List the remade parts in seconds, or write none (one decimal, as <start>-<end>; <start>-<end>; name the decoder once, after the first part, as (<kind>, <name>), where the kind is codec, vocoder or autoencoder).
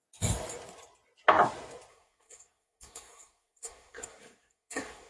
1.9-5.1 (codec, SNAC)